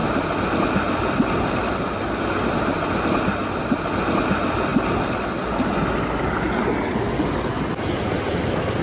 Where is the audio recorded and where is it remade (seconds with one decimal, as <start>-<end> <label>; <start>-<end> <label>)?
0.0-8.8 recorded